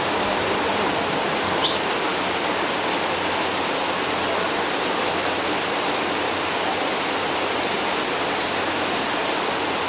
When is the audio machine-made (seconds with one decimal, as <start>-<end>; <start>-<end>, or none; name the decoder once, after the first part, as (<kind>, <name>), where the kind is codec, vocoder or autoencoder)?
none